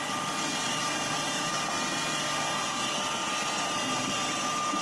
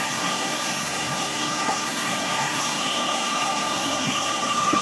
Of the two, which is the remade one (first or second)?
second